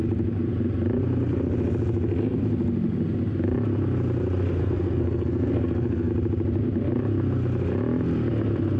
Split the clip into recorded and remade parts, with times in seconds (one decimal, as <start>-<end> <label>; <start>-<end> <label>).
0.0-4.6 recorded; 4.6-6.1 remade; 6.1-8.8 recorded

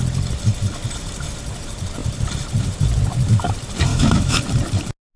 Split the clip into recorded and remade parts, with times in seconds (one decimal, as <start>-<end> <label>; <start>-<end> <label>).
0.0-3.9 recorded; 3.9-4.4 remade; 4.4-5.2 recorded

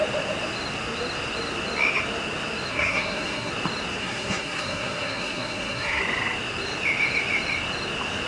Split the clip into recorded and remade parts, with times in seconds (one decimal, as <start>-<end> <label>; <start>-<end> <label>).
0.0-2.7 recorded; 2.7-3.5 remade; 3.5-4.0 recorded; 4.0-6.0 remade; 6.0-8.3 recorded